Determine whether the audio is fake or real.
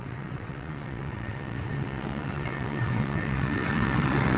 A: fake